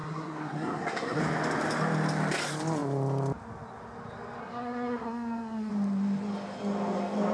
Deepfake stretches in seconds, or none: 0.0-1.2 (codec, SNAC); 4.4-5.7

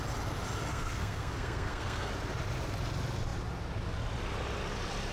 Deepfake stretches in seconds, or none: 0.7-2.1 (codec, SNAC)

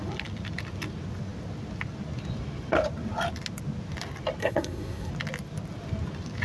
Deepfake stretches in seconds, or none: 4.4-5.1 (codec, SNAC)

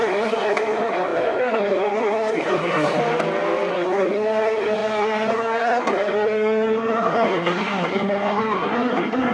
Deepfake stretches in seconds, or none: 0.0-3.0 (codec, SNAC); 3.7-9.3